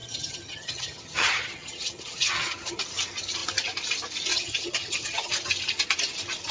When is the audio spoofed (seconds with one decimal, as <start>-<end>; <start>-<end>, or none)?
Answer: 0.0-2.8; 4.3-5.3